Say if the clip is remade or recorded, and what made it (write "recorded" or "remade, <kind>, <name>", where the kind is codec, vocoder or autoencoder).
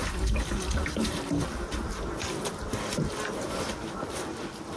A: recorded